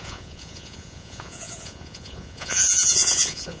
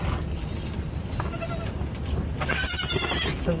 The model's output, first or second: first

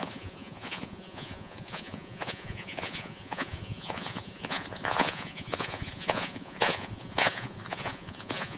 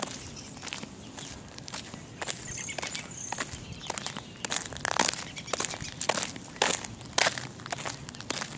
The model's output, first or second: first